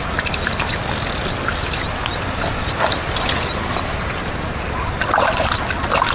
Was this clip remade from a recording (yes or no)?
no